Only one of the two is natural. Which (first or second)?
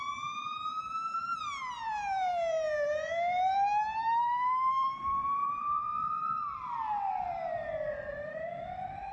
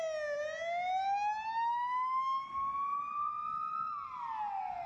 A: second